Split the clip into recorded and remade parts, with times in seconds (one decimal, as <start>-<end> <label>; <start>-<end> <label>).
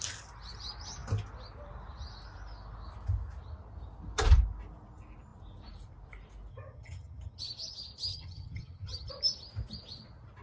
0.0-6.5 recorded; 6.5-7.4 remade; 7.4-8.1 recorded; 8.1-9.1 remade; 9.1-10.4 recorded